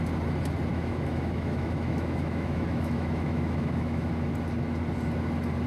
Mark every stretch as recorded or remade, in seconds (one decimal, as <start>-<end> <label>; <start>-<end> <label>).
0.0-0.7 recorded; 0.7-4.1 remade; 4.1-5.7 recorded